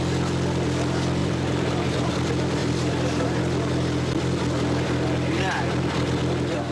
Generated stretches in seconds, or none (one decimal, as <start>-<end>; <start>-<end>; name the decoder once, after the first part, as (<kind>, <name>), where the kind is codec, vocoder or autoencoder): 1.2-2.1 (vocoder, BigVGAN v2); 2.6-3.4